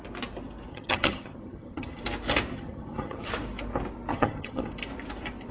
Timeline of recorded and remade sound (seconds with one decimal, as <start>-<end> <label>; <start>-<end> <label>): 0.0-0.7 recorded; 0.7-2.0 remade; 2.0-2.5 recorded; 2.5-3.3 remade; 3.3-4.1 recorded; 4.1-4.7 remade; 4.7-5.5 recorded